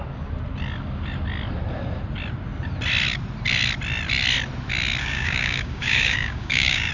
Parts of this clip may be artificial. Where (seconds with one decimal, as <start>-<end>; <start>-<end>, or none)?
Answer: 5.0-6.9

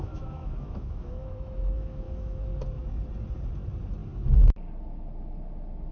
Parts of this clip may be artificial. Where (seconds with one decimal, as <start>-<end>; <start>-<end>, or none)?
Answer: 0.0-2.5

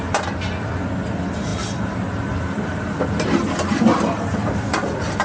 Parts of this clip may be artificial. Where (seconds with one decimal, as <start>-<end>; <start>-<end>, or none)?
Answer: none

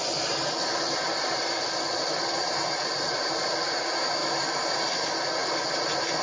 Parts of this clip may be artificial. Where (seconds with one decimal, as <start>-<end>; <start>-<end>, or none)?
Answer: none

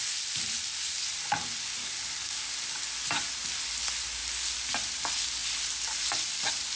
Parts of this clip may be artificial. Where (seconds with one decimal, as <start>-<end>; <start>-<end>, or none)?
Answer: 1.8-2.5

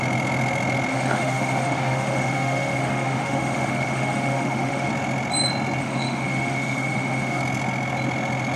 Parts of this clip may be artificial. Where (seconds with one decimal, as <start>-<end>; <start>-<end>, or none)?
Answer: 0.9-4.9; 5.8-7.4